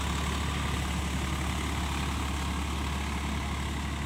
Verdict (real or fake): real